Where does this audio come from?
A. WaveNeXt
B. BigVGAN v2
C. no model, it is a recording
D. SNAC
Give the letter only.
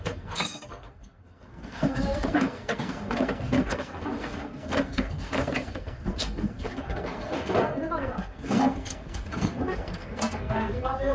D